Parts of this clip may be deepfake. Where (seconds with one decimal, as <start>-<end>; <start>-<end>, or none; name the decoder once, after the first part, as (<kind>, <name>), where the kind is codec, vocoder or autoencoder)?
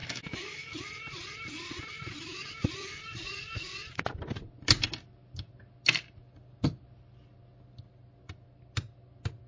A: 0.0-0.8 (autoencoder, DAC-VAE)